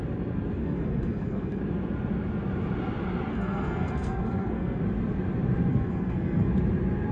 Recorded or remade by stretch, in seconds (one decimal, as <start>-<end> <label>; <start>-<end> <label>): 0.0-0.6 recorded; 0.6-1.6 remade; 1.6-3.3 recorded; 3.3-4.8 remade; 4.8-5.7 recorded; 5.7-6.5 remade; 6.5-7.1 recorded